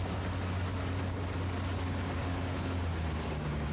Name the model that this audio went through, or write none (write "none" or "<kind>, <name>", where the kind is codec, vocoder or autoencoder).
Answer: none